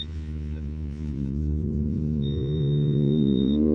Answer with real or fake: fake